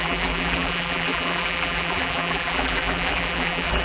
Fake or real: fake